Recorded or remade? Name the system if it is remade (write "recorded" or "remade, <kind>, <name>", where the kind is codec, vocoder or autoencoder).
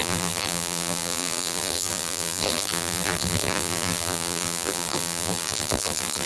remade, vocoder, BigVGAN v2